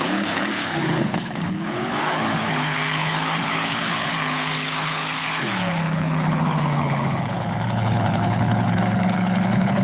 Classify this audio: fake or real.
fake